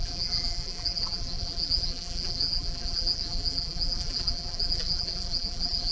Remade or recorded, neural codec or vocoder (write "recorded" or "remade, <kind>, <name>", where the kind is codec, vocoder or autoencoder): remade, vocoder, BigVGAN v2